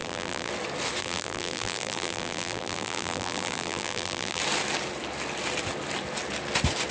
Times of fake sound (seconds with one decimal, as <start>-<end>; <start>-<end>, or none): 0.0-0.5; 1.0-4.4